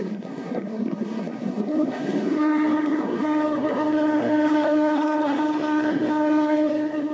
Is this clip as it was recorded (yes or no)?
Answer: no